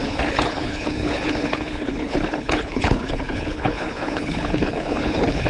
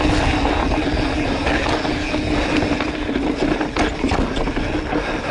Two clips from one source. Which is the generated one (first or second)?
first